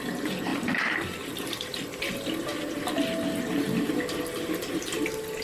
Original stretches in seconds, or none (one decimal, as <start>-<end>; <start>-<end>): 0.0-5.4